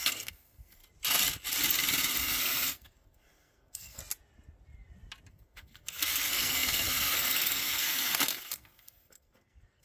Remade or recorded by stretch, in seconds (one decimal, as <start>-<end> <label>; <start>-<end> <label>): 0.0-0.8 remade; 0.8-2.2 recorded; 2.2-4.0 remade; 4.0-5.3 recorded; 5.3-9.8 remade